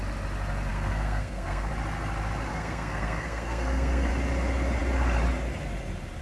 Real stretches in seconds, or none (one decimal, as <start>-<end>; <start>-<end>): 0.0-0.7; 1.7-2.5; 4.1-6.2